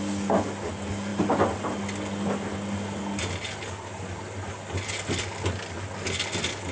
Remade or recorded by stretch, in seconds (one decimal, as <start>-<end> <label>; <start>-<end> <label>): 0.0-6.7 recorded